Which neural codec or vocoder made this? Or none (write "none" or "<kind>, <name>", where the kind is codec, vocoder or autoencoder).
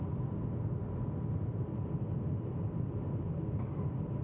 none